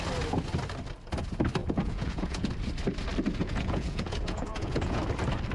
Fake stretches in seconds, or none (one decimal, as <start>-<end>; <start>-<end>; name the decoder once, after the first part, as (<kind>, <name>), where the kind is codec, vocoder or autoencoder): 1.6-2.5 (vocoder, Vocos); 3.4-5.0